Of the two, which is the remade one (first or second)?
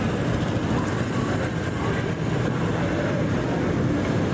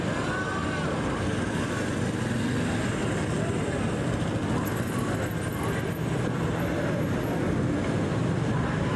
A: first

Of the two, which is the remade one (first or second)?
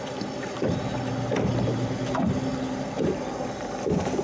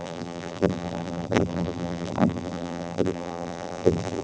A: second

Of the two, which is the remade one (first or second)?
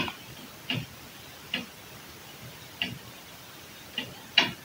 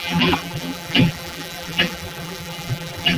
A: second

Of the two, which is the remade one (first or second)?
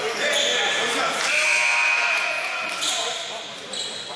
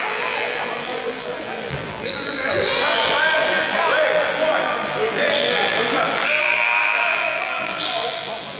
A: second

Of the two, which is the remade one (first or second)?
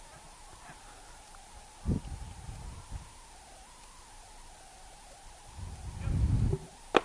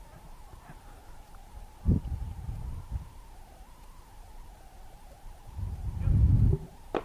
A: second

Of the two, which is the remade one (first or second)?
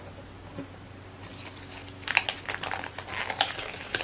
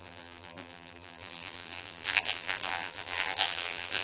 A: second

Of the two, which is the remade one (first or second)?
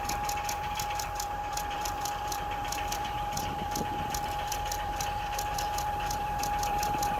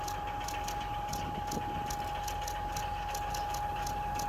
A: first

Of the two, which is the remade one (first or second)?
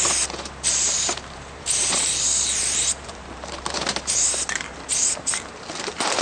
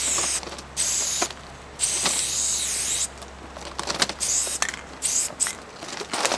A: first